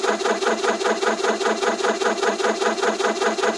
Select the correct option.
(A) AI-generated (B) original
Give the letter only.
B